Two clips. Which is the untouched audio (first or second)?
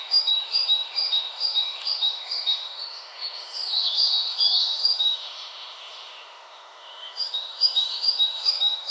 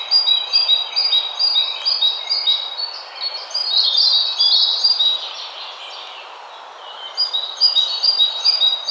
second